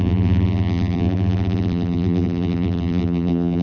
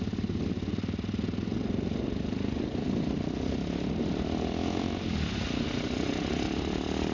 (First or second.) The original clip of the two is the second